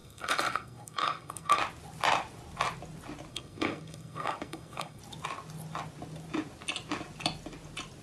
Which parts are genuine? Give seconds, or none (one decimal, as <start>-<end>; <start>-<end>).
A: 1.6-3.3; 5.0-8.0